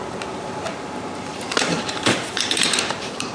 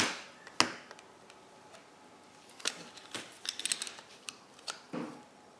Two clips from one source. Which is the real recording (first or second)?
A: second